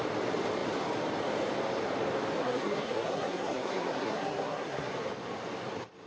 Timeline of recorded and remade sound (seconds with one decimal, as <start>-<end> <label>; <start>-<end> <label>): 0.0-2.4 recorded; 2.4-4.9 remade; 4.9-6.1 recorded